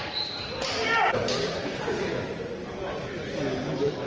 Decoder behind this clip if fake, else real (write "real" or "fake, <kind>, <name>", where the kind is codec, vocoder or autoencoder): real